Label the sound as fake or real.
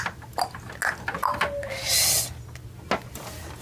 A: real